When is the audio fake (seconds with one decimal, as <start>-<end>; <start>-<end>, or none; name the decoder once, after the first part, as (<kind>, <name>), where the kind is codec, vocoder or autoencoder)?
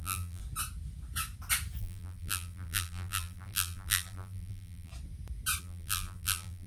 0.0-0.4 (vocoder, BigVGAN v2); 1.8-4.9; 5.6-6.7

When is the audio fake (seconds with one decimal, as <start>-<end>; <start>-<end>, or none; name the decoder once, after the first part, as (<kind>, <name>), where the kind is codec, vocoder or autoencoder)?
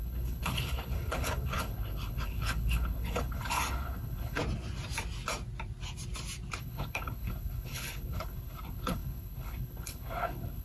0.0-4.4 (codec, HILCodec); 6.6-10.6